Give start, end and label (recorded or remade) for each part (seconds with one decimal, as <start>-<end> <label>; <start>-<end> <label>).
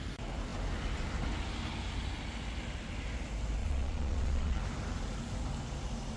0.0-3.6 recorded; 3.6-4.6 remade; 4.6-6.2 recorded